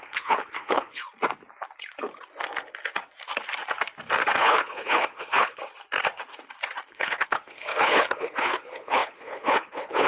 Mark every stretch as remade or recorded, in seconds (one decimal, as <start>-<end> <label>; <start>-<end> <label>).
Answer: 0.0-1.0 remade; 1.0-4.4 recorded; 4.4-5.6 remade; 5.6-6.9 recorded; 6.9-10.1 remade